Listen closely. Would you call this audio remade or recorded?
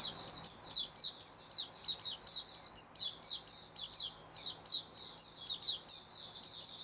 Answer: recorded